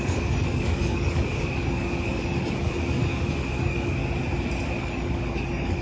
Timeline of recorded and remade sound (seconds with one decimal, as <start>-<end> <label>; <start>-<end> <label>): 0.0-4.0 remade; 4.0-4.8 recorded; 4.8-5.8 remade

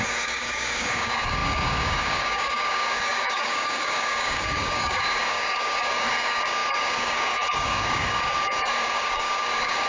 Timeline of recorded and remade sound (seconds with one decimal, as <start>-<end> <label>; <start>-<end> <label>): 0.0-9.9 remade

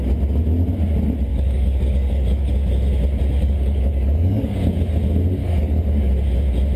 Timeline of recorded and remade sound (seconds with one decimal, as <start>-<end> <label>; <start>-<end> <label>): 0.0-1.3 recorded; 1.3-2.5 remade; 2.5-3.4 recorded; 3.4-4.6 remade; 4.6-5.4 recorded; 5.4-6.1 remade; 6.1-6.8 recorded

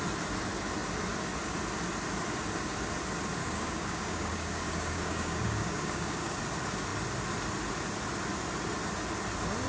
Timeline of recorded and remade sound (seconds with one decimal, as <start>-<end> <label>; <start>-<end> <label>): 0.0-3.4 recorded; 3.4-6.4 remade; 6.4-9.7 recorded

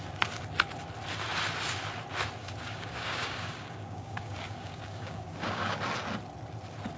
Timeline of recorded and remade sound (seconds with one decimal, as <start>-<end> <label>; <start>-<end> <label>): 0.0-2.4 recorded; 2.4-5.8 remade; 5.8-7.0 recorded